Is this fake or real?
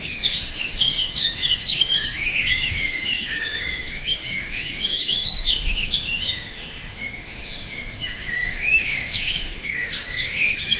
fake